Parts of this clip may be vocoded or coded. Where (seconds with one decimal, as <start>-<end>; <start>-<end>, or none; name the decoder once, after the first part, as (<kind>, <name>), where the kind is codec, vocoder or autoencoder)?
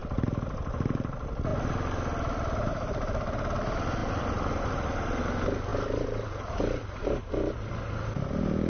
0.0-0.8 (vocoder, BigVGAN v2); 4.0-5.2; 5.7-7.3